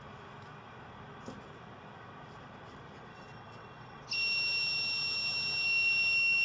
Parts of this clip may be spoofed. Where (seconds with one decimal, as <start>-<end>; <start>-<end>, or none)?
3.1-4.0